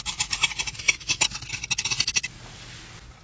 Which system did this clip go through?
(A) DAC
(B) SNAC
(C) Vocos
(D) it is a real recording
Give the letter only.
D